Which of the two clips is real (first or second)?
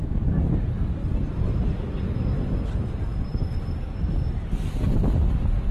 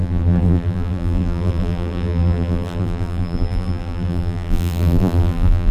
first